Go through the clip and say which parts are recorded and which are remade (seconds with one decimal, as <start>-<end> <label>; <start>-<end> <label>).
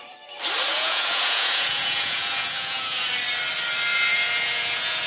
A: 0.0-0.7 recorded; 0.7-3.1 remade; 3.1-3.9 recorded; 3.9-5.1 remade